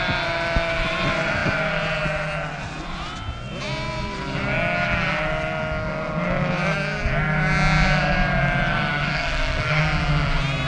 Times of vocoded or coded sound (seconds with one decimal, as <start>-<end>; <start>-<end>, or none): 8.9-9.8